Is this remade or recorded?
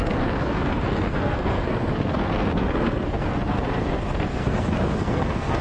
remade